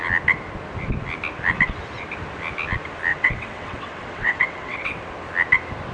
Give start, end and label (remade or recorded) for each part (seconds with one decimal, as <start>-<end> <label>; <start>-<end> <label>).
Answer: 0.0-3.1 recorded; 3.1-5.0 remade; 5.0-5.9 recorded